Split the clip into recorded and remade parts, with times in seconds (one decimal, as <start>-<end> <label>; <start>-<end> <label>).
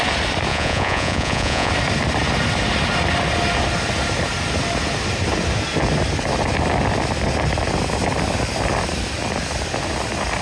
0.0-0.5 recorded; 0.5-1.7 remade; 1.7-10.4 recorded